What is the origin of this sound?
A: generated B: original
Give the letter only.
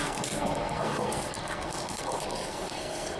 A